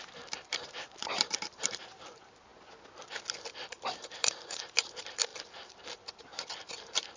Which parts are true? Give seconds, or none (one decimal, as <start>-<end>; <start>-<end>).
2.5-3.3